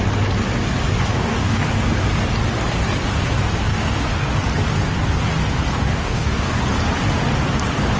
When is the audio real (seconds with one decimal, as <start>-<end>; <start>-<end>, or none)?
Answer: 0.0-1.1; 1.6-3.7; 4.3-5.7; 6.6-8.0